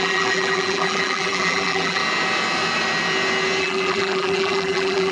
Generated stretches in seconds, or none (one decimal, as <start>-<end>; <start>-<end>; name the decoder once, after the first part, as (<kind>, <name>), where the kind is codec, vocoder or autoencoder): 0.0-2.0 (vocoder, BigVGAN v2); 3.6-5.1